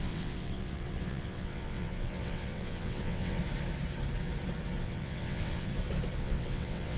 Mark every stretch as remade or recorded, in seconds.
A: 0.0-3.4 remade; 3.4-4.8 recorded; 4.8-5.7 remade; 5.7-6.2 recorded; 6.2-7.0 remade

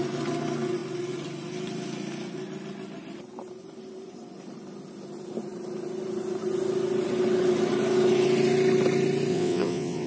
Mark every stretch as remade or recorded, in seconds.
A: 0.0-9.3 recorded; 9.3-10.1 remade

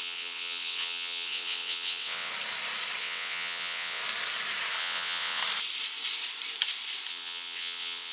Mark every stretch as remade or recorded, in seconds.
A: 0.0-2.3 remade; 2.3-3.0 recorded; 3.0-4.0 remade; 4.0-4.8 recorded; 4.8-5.4 remade; 5.4-7.1 recorded; 7.1-8.1 remade